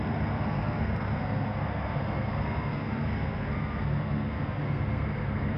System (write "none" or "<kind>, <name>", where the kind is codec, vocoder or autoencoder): codec, SNAC